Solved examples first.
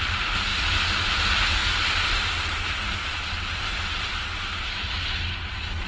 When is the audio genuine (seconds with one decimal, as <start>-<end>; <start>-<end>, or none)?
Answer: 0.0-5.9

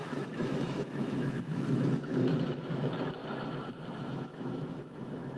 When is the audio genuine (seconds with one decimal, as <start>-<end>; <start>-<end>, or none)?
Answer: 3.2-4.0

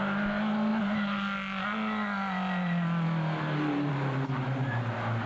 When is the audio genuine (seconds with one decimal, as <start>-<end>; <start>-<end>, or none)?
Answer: 0.0-5.3